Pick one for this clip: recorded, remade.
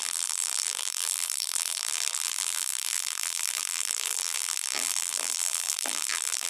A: remade